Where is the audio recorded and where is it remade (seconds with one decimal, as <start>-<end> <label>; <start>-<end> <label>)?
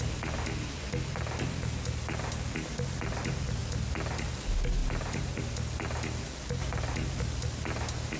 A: 0.0-4.8 recorded; 4.8-5.4 remade; 5.4-8.2 recorded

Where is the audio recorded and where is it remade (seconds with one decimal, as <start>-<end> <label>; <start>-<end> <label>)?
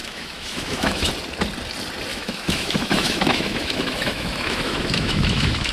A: 0.0-1.1 remade; 1.1-2.1 recorded; 2.1-5.7 remade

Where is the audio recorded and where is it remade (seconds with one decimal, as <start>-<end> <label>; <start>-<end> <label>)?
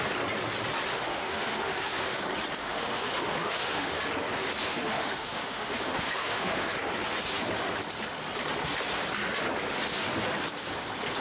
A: 0.0-0.9 recorded; 0.9-2.2 remade; 2.2-2.6 recorded; 2.6-4.0 remade; 4.0-4.7 recorded; 4.7-6.7 remade; 6.7-11.2 recorded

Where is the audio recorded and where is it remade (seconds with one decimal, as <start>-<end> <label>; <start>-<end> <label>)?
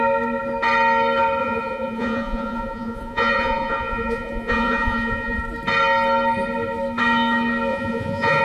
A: 0.0-1.4 recorded; 1.4-5.4 remade; 5.4-7.7 recorded; 7.7-8.4 remade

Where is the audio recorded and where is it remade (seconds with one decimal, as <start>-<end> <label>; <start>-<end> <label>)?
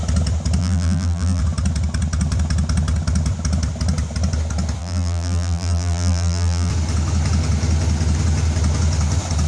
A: 0.0-0.6 recorded; 0.6-1.4 remade; 1.4-4.8 recorded; 4.8-6.7 remade; 6.7-9.5 recorded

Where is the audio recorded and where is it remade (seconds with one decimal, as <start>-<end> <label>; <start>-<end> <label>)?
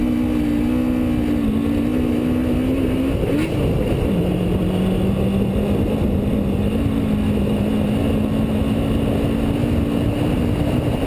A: 0.0-11.1 recorded